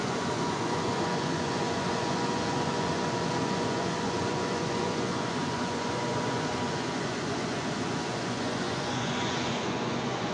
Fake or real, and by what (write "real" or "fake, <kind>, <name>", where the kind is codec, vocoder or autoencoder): fake, vocoder, Vocos